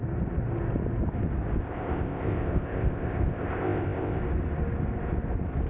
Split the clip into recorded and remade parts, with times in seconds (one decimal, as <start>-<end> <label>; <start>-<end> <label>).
0.0-1.6 recorded; 1.6-4.2 remade; 4.2-5.7 recorded